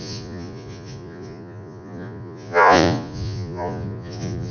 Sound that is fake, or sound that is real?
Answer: fake